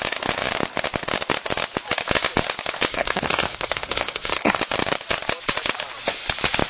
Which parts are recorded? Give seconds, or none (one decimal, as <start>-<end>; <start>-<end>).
0.0-2.9; 4.6-6.7